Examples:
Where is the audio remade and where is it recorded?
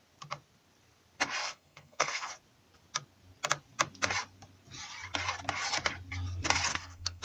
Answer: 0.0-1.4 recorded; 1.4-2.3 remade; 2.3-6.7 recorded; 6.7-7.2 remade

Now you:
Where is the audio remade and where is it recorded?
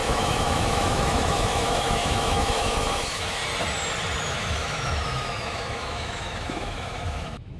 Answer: 0.0-3.4 remade; 3.4-4.2 recorded; 4.2-7.6 remade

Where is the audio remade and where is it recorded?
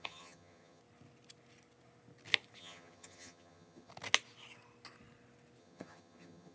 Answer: 0.0-0.8 remade; 0.8-2.6 recorded; 2.6-3.9 remade; 3.9-5.6 recorded; 5.6-6.5 remade